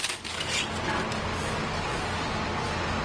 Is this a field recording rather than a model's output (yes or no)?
yes